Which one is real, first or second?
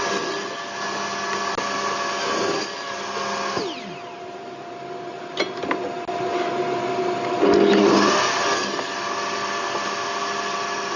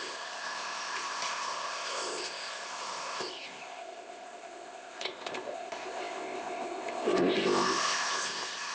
first